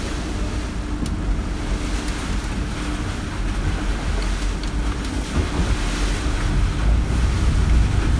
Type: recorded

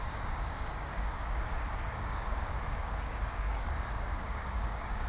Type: remade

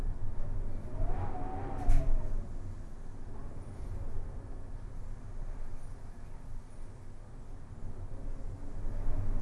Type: recorded